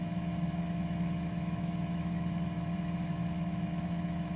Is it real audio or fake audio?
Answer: fake